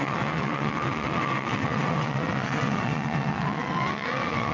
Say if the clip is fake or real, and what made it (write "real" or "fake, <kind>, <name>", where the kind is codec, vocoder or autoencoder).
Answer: fake, vocoder, WaveNeXt